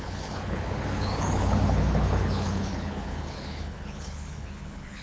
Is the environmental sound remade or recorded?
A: remade